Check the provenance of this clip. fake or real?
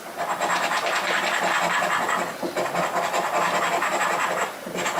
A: real